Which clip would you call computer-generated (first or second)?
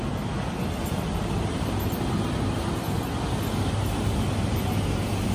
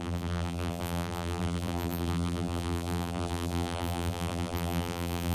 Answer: second